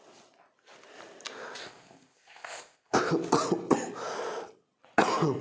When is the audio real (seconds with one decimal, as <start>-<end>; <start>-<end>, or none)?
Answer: 0.0-1.6; 3.1-5.4